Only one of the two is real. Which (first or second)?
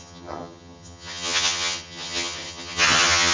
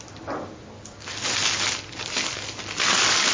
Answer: second